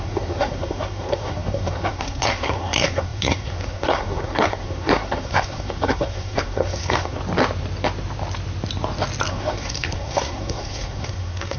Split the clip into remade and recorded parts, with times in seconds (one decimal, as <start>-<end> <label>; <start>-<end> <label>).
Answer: 0.0-7.2 remade; 7.2-9.3 recorded; 9.3-11.6 remade